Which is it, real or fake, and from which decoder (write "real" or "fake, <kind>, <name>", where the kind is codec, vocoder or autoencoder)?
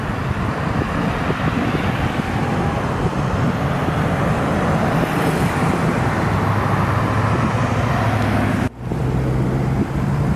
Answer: real